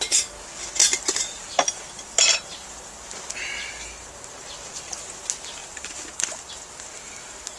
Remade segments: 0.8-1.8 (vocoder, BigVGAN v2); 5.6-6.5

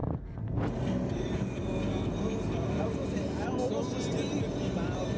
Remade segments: none

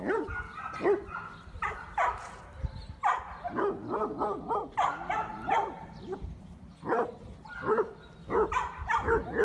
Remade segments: 1.6-2.3 (vocoder, BigVGAN v2); 5.3-6.7

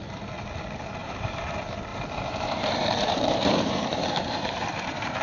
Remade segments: 1.0-1.5 (vocoder, BigVGAN v2); 1.9-5.2

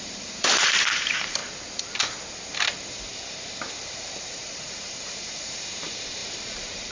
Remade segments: 0.0-1.4 (vocoder, BigVGAN v2); 2.9-6.9